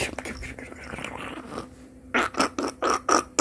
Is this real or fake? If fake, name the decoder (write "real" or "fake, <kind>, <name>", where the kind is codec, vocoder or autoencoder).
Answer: real